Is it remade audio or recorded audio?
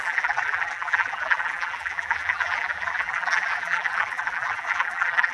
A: remade